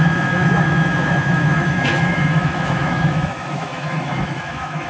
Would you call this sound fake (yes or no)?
yes